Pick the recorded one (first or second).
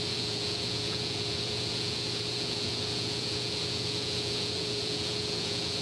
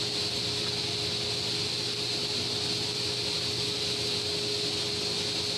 second